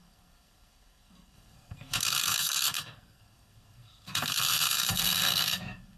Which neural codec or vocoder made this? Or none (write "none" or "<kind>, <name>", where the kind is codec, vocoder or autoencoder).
codec, SNAC